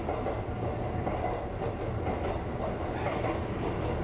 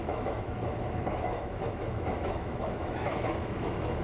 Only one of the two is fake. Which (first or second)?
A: second